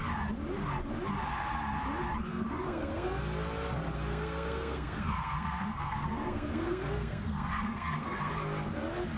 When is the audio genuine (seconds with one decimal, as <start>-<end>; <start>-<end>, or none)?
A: 0.0-2.3; 3.2-4.1; 8.3-9.2